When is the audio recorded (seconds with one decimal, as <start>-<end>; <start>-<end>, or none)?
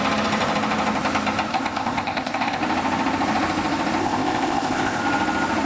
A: 0.0-1.5; 2.6-4.0; 5.0-5.7